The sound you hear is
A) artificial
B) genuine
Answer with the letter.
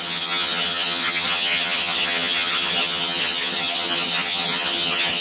A